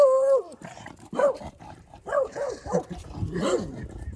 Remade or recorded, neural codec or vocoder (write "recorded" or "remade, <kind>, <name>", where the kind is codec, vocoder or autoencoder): remade, vocoder, BigVGAN v2